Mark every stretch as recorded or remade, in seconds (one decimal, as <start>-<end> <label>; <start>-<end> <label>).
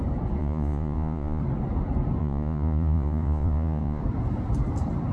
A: 0.0-0.4 recorded; 0.4-1.4 remade; 1.4-2.2 recorded; 2.2-4.0 remade; 4.0-5.1 recorded